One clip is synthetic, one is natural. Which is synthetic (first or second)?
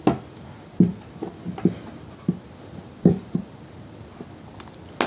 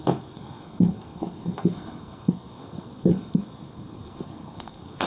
second